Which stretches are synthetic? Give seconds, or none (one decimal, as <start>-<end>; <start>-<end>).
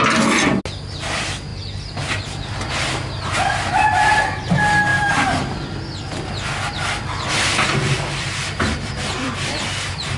4.9-10.2